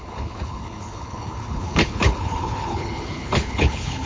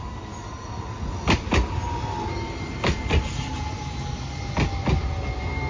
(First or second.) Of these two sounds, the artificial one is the first